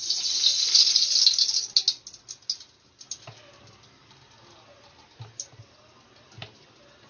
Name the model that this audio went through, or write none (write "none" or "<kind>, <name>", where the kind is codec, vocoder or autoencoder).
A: none